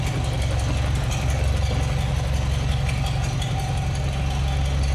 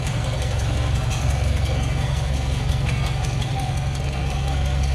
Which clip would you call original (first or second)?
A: first